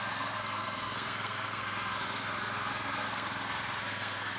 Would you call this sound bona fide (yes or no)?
no